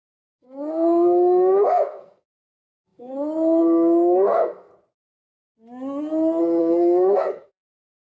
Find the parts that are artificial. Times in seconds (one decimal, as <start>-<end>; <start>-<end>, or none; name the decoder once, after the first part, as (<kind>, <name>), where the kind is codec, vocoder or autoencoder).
0.0-4.7 (codec, SNAC); 6.6-8.1